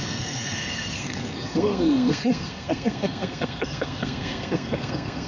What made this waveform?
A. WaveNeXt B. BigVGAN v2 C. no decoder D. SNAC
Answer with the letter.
D